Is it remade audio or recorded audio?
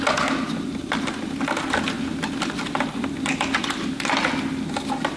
recorded